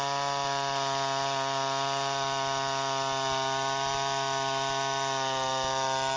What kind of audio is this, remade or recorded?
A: recorded